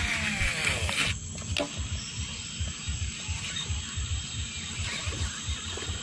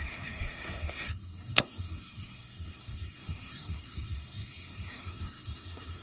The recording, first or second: first